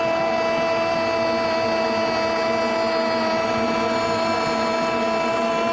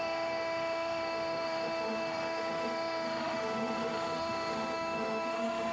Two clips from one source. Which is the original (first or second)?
first